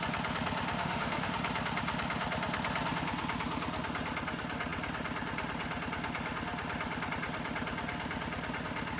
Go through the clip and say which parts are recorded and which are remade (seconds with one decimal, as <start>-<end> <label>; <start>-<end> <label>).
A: 0.0-0.8 recorded; 0.8-1.3 remade; 1.3-9.0 recorded